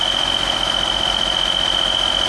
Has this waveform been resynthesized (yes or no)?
no